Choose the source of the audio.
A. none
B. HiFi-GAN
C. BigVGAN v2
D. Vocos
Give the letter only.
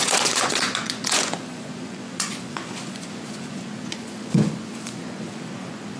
D